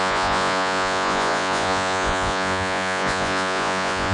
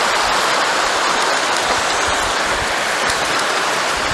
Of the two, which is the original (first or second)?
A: second